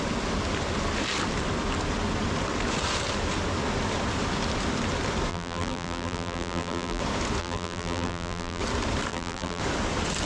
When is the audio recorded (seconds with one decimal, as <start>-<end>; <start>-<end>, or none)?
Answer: 0.0-5.3; 7.0-7.4; 8.6-9.1; 9.6-10.3